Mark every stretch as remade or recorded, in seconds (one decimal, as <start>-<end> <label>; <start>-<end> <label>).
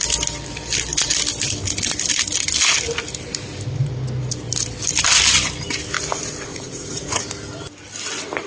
0.0-6.5 recorded; 6.5-7.2 remade; 7.2-8.5 recorded